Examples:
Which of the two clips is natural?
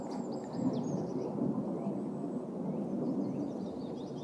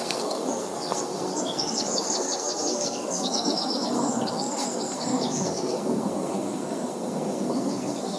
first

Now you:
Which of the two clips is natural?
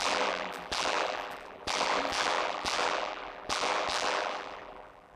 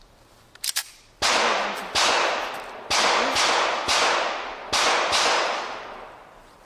second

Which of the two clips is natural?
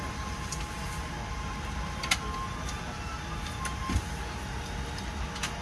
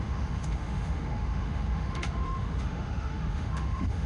first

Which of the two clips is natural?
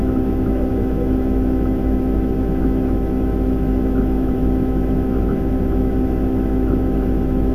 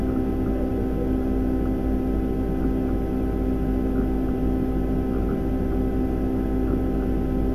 second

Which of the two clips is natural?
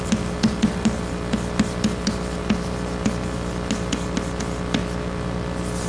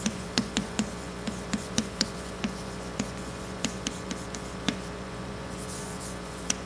first